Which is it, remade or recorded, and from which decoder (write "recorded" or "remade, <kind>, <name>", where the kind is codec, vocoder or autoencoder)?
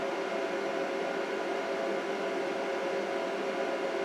recorded